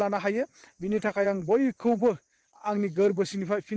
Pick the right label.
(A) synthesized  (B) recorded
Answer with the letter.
A